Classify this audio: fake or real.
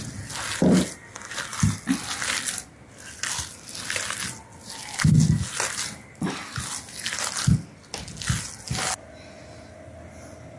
real